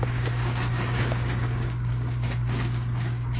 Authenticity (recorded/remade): remade